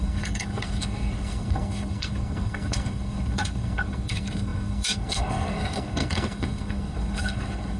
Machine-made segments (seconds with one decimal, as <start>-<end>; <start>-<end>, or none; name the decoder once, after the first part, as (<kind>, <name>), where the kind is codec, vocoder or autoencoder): 0.0-7.8 (codec, SNAC)